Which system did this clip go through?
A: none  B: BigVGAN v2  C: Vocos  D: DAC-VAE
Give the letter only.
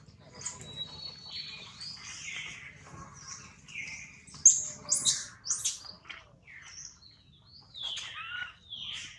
A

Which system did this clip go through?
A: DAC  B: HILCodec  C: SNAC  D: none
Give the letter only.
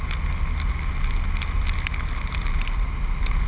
D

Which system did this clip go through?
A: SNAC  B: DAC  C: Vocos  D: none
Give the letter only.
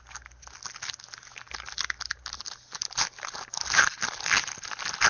D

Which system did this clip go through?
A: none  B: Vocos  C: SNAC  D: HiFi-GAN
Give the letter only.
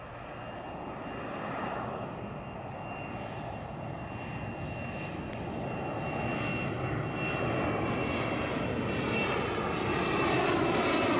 A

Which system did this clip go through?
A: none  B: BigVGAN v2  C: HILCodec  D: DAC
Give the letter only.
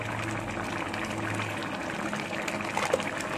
A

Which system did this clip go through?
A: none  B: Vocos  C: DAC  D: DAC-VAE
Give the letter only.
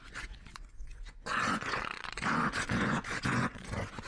B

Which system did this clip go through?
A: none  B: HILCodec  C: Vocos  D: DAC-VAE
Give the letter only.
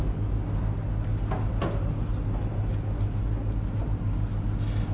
A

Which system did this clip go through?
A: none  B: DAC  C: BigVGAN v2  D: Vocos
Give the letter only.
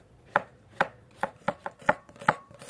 D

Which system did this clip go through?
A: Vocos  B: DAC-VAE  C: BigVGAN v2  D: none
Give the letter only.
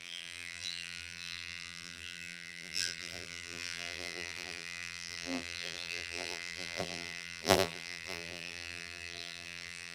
C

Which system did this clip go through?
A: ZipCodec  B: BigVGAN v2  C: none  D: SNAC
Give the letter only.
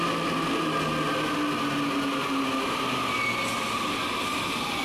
C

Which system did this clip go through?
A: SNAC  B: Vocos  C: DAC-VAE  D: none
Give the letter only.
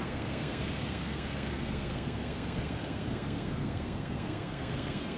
A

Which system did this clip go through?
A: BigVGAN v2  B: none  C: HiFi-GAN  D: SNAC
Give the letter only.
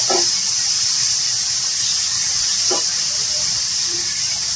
B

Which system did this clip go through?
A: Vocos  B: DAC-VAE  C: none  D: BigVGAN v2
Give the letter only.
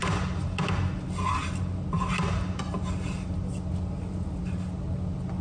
C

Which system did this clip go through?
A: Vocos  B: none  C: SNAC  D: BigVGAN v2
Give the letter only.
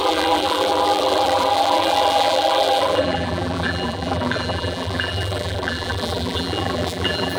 D